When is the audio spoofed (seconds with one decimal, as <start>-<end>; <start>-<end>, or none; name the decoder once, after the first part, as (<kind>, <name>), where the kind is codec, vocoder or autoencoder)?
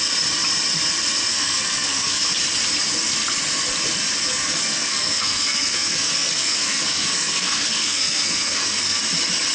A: 1.3-2.2 (codec, SNAC); 4.3-9.0